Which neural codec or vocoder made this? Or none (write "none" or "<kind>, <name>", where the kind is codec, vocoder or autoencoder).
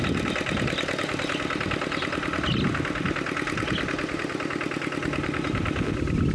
none